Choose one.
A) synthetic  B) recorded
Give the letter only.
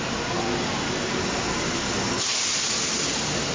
B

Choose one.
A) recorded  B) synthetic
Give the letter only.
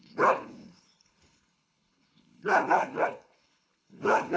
B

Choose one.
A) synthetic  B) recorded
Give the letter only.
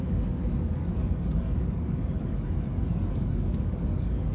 A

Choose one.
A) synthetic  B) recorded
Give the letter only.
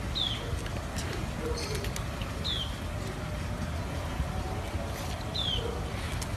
B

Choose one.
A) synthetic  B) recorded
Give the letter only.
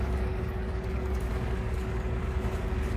A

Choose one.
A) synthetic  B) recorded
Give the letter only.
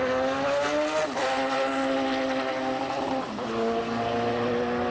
B